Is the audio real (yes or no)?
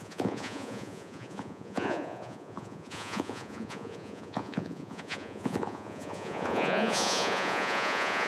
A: no